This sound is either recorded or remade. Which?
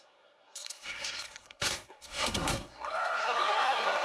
remade